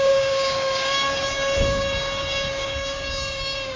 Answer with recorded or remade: remade